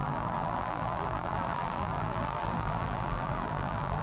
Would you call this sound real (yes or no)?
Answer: no